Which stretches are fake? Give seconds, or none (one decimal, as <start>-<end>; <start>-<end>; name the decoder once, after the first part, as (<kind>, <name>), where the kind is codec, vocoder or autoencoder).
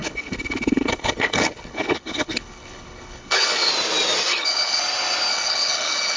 0.0-3.7 (codec, HILCodec); 4.3-4.8; 5.3-6.2